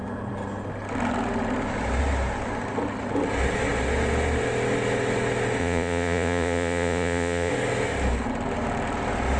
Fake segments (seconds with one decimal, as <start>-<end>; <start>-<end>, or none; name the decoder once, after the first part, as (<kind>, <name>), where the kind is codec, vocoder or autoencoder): 5.6-7.5 (vocoder, Vocos)

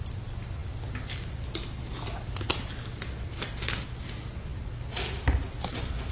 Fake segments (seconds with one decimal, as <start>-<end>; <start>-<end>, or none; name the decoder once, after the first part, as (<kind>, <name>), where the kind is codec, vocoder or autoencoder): none

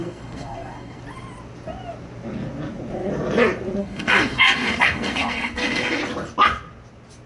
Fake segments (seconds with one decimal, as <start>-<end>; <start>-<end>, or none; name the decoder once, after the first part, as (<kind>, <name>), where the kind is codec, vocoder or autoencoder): 0.0-1.0 (codec, SNAC); 3.8-6.0

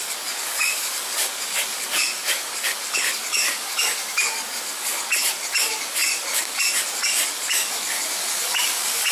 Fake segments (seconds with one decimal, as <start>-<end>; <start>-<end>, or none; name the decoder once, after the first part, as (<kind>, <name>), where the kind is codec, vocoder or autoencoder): 0.0-9.1 (codec, DAC)